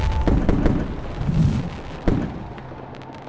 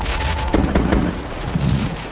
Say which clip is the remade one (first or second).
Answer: second